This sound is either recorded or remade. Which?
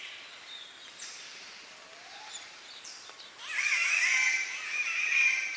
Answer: remade